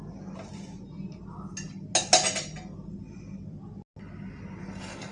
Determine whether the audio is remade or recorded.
recorded